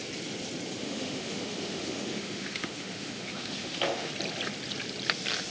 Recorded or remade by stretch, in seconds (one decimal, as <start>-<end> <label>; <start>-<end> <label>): 0.0-0.8 recorded; 0.8-4.1 remade; 4.1-5.5 recorded